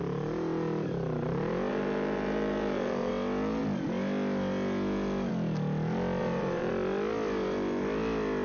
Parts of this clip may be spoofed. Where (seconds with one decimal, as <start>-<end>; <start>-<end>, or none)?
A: 1.7-3.1; 6.2-6.7

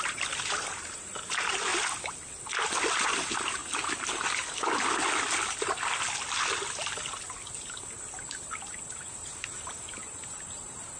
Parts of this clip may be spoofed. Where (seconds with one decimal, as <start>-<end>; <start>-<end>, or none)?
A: 0.0-1.7; 2.9-3.6; 8.5-11.0

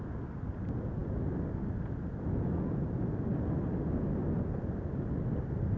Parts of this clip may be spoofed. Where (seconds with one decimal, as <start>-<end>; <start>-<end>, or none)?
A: none